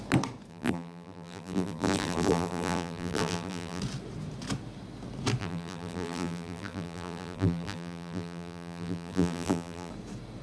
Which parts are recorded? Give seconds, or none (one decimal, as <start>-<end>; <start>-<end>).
0.0-0.5; 3.8-5.4; 9.9-10.4